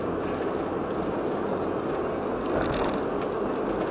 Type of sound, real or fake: real